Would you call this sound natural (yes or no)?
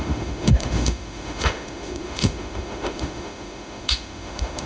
no